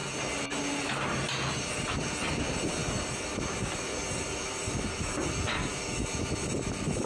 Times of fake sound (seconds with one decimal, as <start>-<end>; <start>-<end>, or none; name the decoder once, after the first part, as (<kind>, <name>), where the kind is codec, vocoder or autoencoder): none